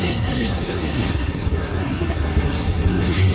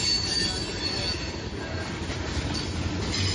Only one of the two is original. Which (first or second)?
second